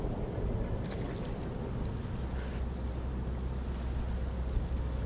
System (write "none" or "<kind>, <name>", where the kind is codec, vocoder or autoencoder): none